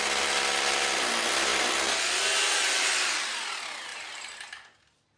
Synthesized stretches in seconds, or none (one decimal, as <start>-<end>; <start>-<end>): none